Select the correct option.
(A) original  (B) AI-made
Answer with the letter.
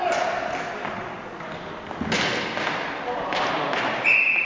A